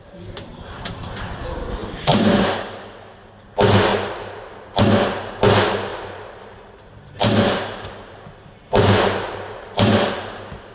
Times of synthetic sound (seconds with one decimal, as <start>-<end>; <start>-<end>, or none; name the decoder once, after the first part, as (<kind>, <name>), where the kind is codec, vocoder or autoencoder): 1.8-2.3 (vocoder, BigVGAN v2); 3.9-4.5; 5.9-10.7